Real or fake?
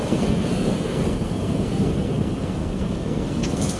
fake